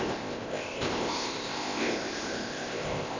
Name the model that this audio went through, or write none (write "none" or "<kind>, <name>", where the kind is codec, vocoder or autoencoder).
codec, ZipCodec